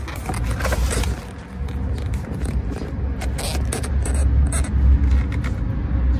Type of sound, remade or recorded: recorded